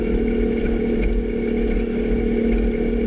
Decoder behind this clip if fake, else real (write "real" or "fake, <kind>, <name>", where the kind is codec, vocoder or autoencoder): real